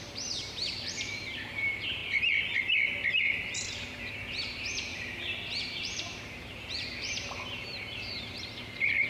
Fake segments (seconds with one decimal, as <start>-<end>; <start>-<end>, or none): 0.0-2.0; 3.1-4.9; 5.5-9.1

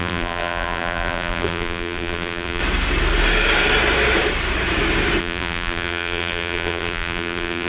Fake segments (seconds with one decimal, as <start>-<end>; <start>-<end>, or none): 0.0-2.6; 5.2-7.7

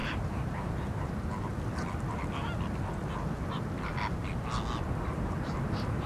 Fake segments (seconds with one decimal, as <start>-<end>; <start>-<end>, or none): 0.0-1.3; 5.0-6.1

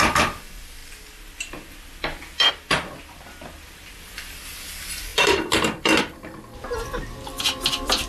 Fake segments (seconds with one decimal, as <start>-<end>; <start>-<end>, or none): 0.0-0.8; 2.5-5.1; 6.0-8.1